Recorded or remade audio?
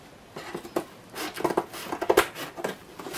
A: recorded